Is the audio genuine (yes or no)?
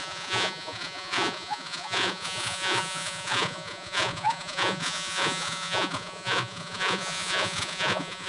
no